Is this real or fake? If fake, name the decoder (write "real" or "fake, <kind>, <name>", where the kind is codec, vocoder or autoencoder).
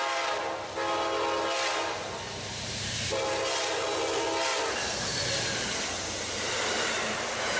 real